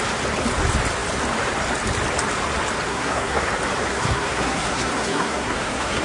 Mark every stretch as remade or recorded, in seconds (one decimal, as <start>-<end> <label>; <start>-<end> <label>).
0.0-2.9 recorded; 2.9-3.5 remade; 3.5-3.9 recorded; 3.9-6.0 remade